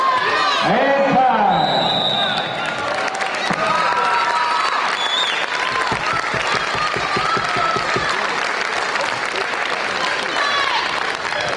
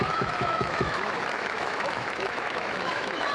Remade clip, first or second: second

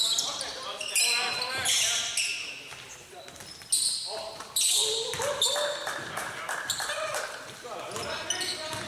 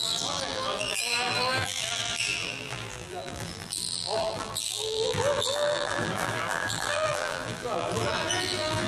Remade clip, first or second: second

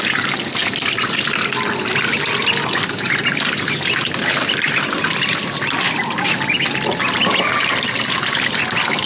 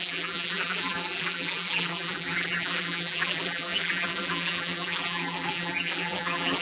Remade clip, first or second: second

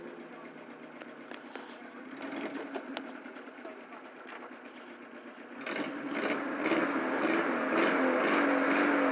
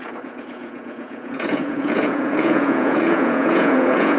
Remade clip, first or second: second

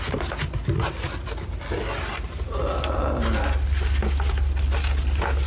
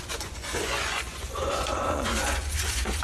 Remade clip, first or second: second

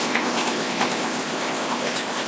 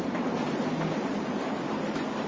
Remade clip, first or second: first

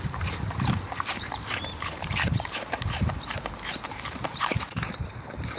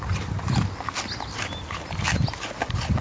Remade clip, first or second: first